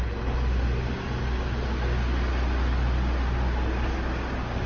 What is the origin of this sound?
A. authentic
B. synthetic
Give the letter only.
A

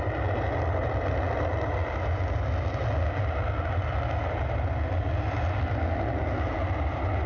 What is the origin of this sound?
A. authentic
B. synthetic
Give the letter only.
A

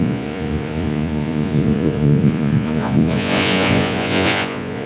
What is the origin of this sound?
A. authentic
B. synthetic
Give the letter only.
B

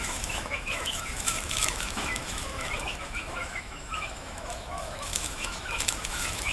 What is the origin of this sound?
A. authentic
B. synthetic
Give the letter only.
B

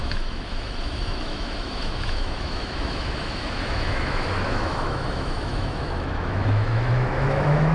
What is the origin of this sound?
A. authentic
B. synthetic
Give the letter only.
B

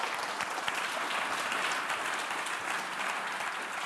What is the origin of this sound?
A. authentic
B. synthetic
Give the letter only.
A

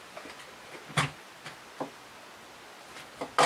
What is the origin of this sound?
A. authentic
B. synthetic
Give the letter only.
A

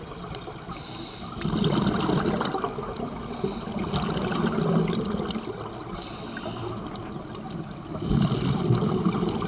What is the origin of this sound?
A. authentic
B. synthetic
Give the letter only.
A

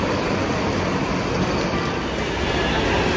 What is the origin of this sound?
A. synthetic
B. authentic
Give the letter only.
B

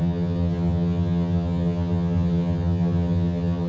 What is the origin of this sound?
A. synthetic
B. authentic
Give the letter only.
A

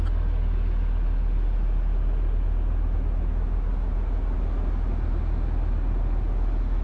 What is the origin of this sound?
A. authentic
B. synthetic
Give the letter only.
A